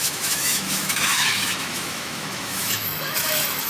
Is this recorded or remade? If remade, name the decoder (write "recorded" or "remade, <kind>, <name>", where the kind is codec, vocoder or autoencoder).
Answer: remade, autoencoder, DAC-VAE